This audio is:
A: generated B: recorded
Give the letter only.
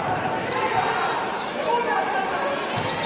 A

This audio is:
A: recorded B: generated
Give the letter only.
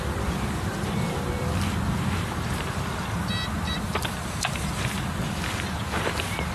B